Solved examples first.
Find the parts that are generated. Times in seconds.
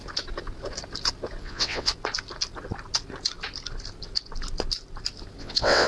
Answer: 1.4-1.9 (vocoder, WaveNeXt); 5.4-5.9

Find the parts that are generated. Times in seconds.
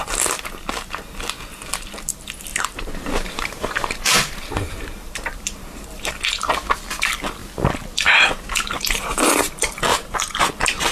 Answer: 2.5-6.1 (vocoder, BigVGAN v2); 9.9-10.5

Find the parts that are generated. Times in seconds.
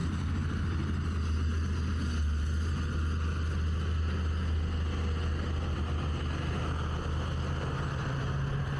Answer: none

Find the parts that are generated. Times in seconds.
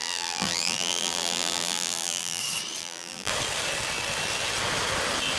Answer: 0.0-2.4 (vocoder, BigVGAN v2); 2.8-3.3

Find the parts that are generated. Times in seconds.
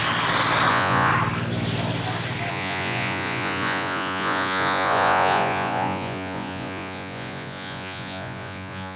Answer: 0.7-1.1 (vocoder, Vocos); 2.5-9.0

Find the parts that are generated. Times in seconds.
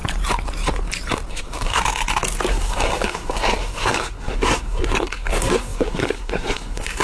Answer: 1.3-1.8 (codec, SNAC); 2.5-7.0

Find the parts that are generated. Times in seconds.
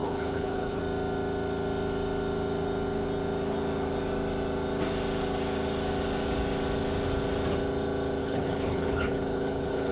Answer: 0.0-0.8 (codec, HILCodec); 8.2-9.9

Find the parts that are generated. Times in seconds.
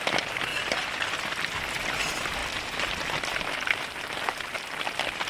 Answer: 0.0-0.5 (vocoder, BigVGAN v2); 1.2-5.3